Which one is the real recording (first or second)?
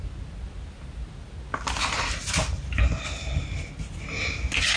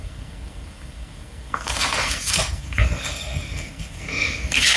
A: first